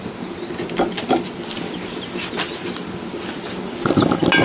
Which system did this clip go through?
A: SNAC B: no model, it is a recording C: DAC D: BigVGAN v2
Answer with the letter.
B